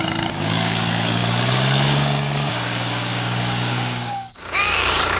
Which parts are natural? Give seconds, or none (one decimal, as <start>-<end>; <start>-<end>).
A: none